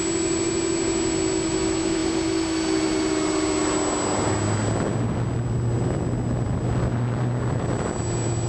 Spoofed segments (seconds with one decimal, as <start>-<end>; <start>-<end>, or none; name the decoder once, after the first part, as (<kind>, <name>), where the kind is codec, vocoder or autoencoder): none